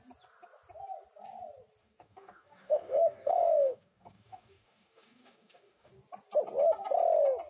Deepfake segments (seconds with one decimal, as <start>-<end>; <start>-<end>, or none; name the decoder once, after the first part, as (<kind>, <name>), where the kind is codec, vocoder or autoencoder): 1.8-5.9 (codec, DAC)